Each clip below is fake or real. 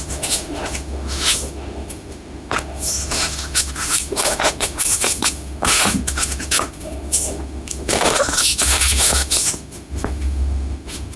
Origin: fake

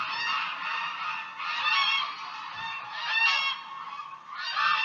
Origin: real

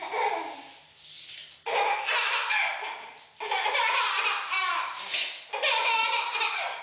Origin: real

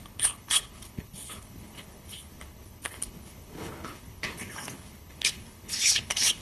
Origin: fake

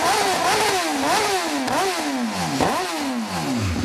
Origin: real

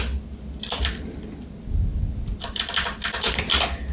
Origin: real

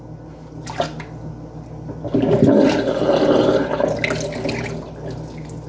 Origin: real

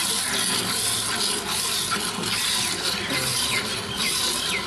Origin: real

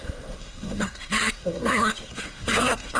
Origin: fake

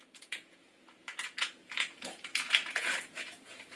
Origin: fake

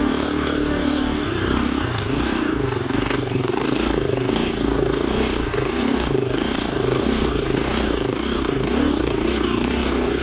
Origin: fake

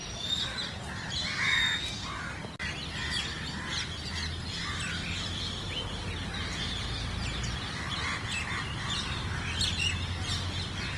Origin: real